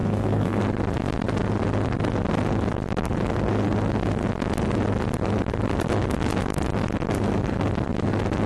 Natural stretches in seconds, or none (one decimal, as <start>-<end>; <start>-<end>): 0.6-8.5